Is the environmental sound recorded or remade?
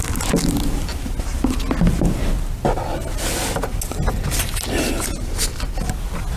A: recorded